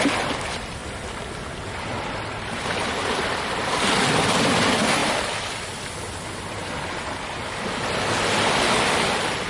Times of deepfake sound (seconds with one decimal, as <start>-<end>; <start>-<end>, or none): 5.0-5.9